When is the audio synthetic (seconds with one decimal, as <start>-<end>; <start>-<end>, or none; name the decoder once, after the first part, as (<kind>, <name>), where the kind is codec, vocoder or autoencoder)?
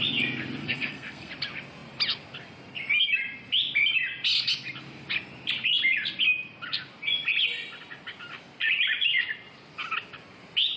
0.6-1.3 (codec, SNAC)